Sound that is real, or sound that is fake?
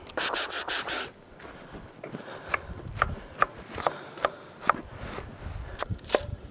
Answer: real